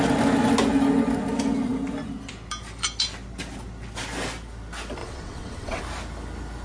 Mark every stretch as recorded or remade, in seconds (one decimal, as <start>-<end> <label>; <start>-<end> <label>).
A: 0.0-5.0 recorded; 5.0-5.8 remade; 5.8-6.6 recorded